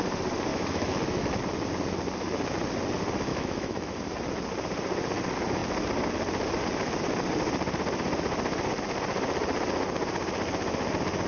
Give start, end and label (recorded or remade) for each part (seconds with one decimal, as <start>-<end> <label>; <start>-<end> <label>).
0.0-0.5 recorded; 0.5-1.4 remade; 1.4-3.3 recorded; 3.3-4.0 remade; 4.0-11.3 recorded